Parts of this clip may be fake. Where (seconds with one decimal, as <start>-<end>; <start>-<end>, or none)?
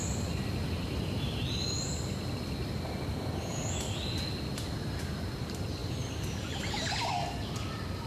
none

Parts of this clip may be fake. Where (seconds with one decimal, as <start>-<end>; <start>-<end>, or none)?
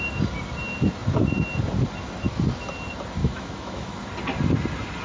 3.2-4.0